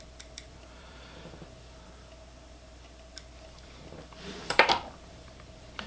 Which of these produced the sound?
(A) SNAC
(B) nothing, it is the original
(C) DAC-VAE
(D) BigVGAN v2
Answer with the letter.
D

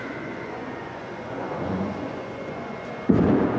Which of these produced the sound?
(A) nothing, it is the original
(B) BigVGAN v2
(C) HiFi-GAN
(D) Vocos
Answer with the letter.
D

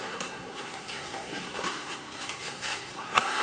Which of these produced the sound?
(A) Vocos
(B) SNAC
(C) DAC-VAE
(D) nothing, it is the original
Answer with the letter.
B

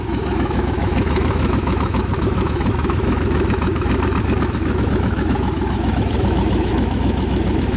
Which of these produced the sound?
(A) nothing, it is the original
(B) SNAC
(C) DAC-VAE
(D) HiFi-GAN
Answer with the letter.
C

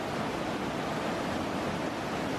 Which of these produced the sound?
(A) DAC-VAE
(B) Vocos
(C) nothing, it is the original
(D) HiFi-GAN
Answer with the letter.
C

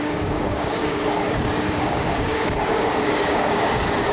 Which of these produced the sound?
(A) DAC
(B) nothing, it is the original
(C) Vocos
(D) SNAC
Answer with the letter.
A